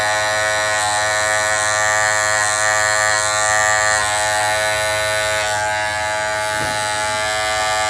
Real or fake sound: real